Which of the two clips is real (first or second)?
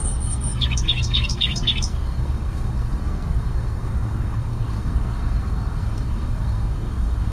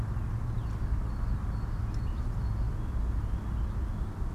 second